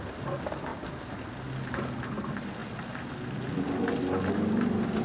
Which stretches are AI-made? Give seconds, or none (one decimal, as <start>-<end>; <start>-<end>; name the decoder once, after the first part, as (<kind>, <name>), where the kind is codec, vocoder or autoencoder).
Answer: none